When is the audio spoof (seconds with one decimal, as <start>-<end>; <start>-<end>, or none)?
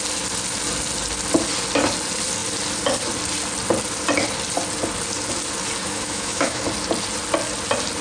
5.8-6.6